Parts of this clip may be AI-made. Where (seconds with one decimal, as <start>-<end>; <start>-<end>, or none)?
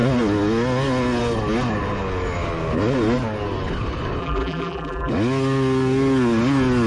4.2-5.1